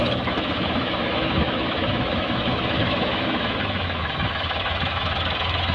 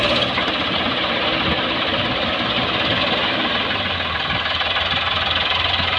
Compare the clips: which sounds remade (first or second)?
first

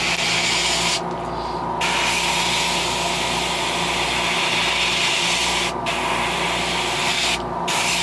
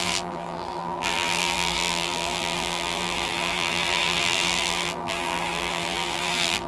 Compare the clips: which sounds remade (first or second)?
second